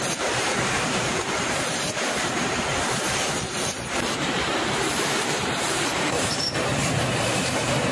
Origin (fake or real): fake